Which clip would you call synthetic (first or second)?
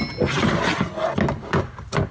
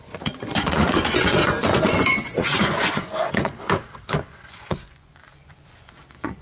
second